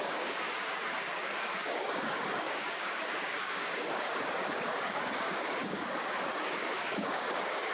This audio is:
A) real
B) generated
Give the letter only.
B